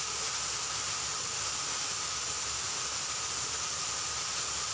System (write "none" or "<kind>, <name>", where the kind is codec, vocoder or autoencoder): vocoder, BigVGAN v2